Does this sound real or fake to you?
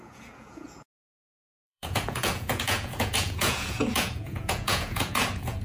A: fake